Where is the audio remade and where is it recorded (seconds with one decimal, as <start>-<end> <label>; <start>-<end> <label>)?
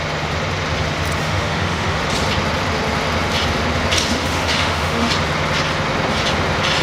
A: 0.0-1.2 recorded; 1.2-2.0 remade; 2.0-4.1 recorded; 4.1-5.1 remade; 5.1-6.8 recorded